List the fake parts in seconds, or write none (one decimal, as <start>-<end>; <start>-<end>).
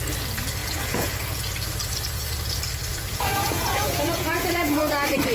0.6-1.5; 2.9-4.8